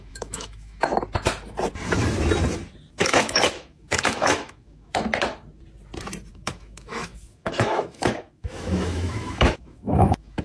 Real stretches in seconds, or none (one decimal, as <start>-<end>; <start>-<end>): 0.9-2.9; 5.1-6.3